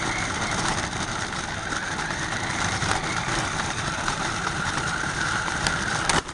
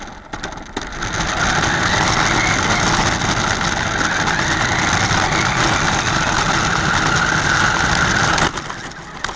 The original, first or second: second